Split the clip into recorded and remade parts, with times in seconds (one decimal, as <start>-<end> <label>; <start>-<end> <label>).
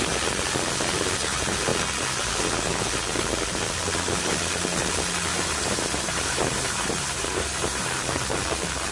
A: 0.0-5.3 recorded; 5.3-8.1 remade; 8.1-8.9 recorded